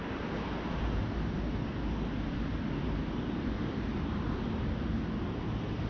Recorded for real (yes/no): yes